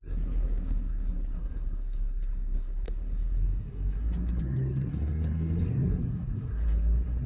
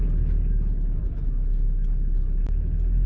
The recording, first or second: second